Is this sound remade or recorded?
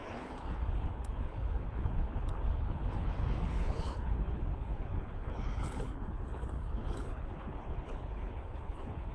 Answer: remade